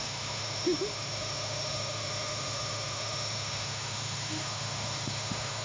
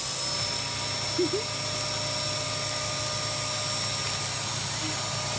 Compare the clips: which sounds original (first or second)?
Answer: second